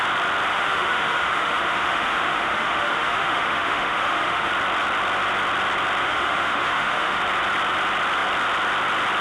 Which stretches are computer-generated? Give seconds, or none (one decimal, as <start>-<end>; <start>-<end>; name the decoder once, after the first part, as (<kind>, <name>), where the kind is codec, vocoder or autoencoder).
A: 0.5-4.5 (autoencoder, DAC-VAE); 6.0-7.2